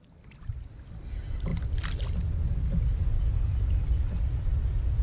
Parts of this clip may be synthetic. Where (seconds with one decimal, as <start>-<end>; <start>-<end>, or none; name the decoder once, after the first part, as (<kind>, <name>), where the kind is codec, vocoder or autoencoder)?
none